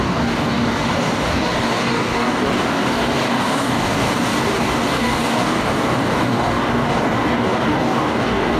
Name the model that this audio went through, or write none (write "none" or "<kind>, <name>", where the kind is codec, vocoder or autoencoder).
codec, DAC